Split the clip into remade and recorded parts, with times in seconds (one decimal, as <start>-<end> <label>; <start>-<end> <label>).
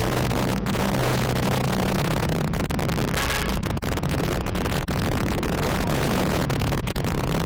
0.0-2.7 remade; 2.7-3.5 recorded; 3.5-7.5 remade